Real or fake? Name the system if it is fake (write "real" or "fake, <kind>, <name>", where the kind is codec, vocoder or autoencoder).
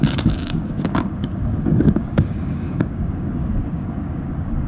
fake, codec, DAC